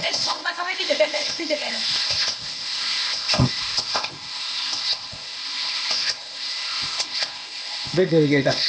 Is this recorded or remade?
remade